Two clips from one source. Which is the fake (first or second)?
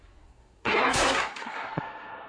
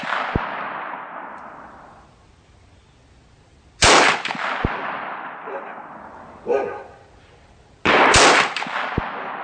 first